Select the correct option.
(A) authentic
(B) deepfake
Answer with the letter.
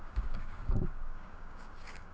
B